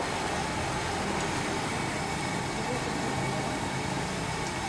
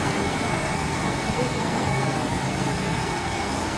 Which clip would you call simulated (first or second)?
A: second